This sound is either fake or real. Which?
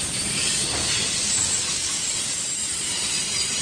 real